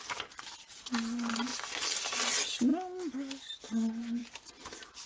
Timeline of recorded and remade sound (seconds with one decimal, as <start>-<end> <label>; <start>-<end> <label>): 0.0-5.1 recorded